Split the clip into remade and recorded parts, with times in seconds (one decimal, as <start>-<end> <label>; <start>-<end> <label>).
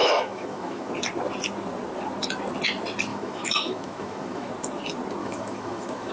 0.0-0.9 remade; 0.9-3.1 recorded; 3.1-4.5 remade; 4.5-5.2 recorded; 5.2-6.1 remade